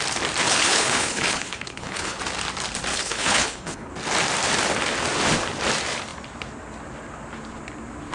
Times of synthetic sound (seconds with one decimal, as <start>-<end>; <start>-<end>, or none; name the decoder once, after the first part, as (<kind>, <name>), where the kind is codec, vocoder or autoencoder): 0.4-2.2 (codec, HILCodec); 2.9-3.9